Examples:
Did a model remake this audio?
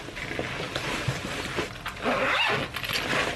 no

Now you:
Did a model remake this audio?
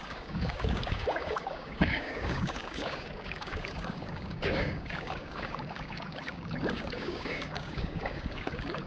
yes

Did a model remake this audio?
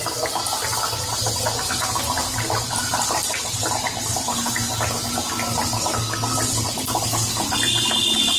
no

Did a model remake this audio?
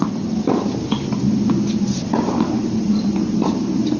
no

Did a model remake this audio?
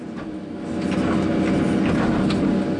no